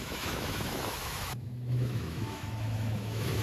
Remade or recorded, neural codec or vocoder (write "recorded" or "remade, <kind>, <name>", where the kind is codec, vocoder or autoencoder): remade, autoencoder, DAC-VAE